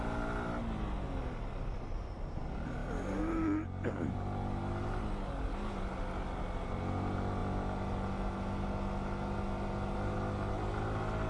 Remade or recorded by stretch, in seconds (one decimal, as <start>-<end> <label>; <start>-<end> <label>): 0.0-11.3 recorded